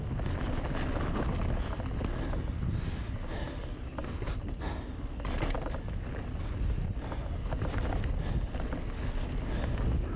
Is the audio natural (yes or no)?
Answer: yes